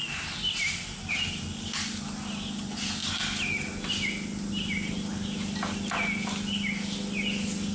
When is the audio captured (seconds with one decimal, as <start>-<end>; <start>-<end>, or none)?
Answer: 0.0-7.7